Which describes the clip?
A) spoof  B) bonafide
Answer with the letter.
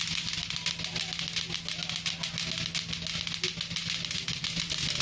B